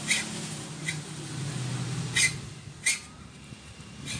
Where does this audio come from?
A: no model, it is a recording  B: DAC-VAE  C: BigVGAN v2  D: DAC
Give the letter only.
A